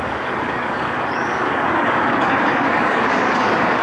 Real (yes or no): no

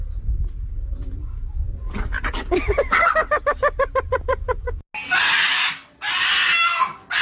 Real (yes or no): yes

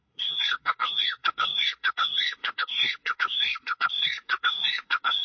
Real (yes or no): no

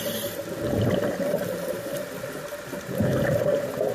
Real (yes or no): no